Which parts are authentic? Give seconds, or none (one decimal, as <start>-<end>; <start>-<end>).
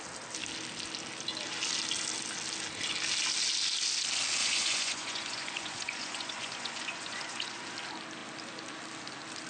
0.0-4.4; 7.6-9.5